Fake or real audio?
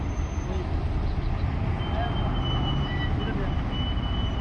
real